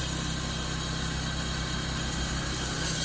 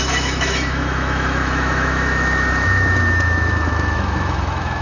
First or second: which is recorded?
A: first